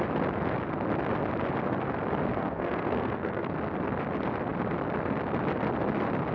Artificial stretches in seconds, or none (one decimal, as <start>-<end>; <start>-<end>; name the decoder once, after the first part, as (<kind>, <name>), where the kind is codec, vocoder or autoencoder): 2.3-3.5 (codec, SNAC)